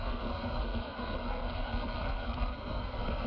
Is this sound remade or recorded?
remade